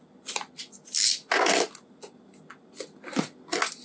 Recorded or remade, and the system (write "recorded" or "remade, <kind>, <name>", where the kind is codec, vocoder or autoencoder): recorded